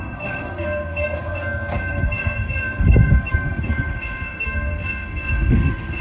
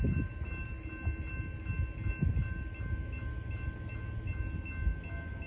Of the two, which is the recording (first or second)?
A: second